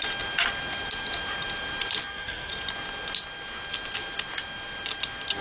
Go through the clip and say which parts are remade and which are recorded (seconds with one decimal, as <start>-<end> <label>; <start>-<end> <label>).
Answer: 0.0-2.0 recorded; 2.0-2.5 remade; 2.5-5.4 recorded